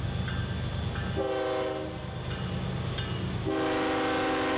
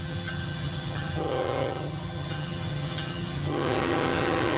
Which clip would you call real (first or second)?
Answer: first